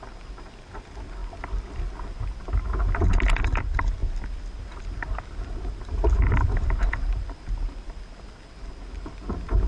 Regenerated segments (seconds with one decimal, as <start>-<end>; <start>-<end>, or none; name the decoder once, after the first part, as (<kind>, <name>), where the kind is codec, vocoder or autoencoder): none